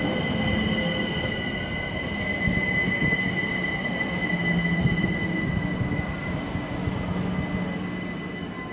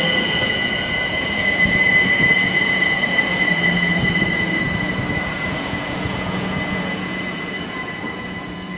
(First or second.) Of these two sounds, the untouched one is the first